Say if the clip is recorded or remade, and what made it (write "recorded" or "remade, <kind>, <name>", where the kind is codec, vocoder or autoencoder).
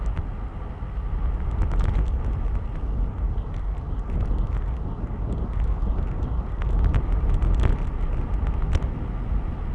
recorded